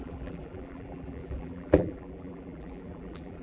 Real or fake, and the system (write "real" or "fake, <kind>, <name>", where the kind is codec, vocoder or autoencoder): fake, vocoder, BigVGAN v2